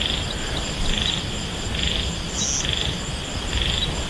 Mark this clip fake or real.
real